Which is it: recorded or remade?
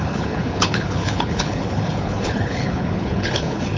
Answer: remade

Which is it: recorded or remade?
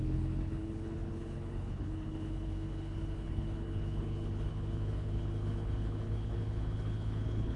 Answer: remade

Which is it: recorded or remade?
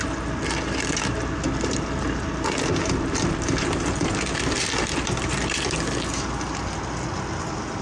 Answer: recorded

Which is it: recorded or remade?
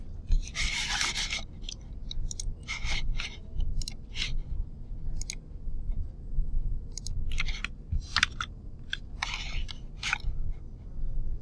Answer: recorded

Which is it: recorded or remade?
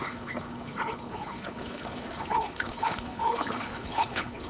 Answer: remade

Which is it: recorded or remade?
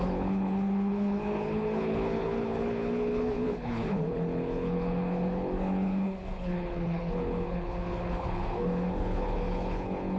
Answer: remade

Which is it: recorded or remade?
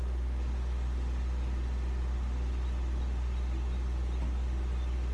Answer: recorded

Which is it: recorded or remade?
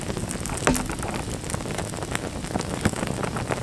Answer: recorded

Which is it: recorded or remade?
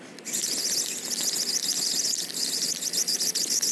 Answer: recorded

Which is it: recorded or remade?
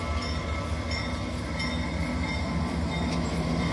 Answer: recorded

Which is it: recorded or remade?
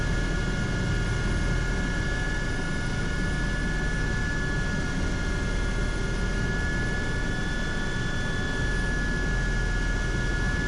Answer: recorded